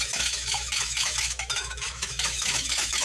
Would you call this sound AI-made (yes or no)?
yes